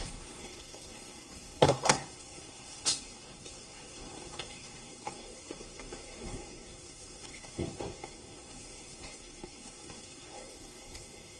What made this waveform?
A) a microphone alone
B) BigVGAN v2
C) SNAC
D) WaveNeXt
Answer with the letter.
C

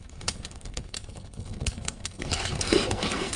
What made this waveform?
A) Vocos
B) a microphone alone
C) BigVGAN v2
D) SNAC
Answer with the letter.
D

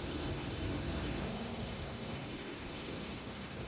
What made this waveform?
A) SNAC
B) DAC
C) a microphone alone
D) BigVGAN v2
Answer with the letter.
A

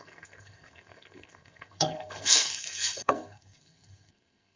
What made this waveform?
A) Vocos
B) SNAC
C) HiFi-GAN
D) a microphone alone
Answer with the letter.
B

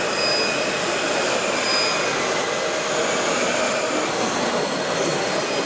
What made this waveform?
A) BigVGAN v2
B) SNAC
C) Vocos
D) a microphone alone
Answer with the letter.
D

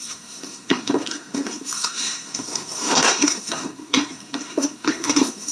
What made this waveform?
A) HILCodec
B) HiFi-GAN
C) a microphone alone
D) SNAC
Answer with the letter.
D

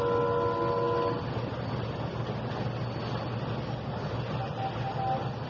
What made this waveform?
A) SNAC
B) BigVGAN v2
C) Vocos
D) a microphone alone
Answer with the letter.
D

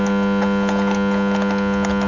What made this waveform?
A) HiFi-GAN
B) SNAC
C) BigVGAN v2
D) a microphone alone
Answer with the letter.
D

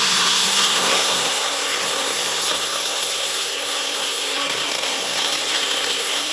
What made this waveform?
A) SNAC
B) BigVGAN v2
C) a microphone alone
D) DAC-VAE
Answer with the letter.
A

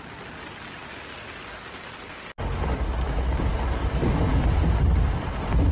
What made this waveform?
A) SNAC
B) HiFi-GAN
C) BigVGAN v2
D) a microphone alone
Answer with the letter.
D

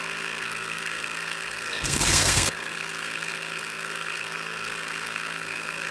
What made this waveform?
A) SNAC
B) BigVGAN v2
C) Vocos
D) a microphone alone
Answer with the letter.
A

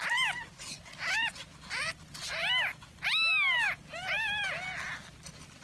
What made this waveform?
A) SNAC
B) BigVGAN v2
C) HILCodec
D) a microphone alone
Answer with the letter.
D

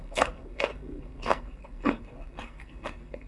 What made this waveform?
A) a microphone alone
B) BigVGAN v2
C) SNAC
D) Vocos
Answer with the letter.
C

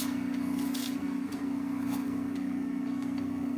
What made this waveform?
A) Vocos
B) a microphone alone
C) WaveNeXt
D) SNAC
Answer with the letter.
D